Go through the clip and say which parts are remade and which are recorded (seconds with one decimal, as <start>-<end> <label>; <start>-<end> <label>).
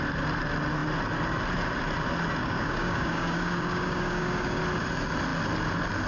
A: 0.0-2.4 recorded; 2.4-4.6 remade; 4.6-6.1 recorded